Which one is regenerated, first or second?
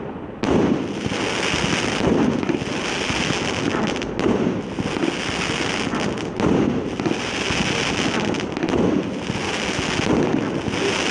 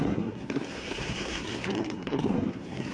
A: second